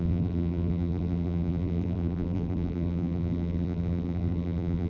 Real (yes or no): no